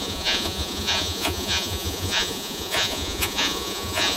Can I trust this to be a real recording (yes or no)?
no